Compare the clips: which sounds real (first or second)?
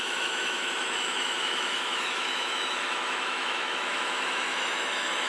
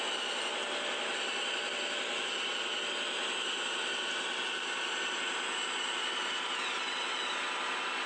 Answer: second